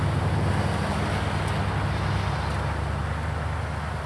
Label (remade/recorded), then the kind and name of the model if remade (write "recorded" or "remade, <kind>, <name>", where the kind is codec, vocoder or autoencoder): recorded